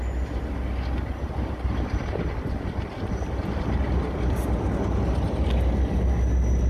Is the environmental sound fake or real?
real